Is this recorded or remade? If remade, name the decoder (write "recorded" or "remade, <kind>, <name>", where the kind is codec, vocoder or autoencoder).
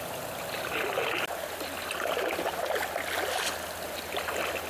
recorded